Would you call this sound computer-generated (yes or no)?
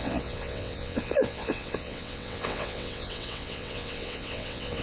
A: yes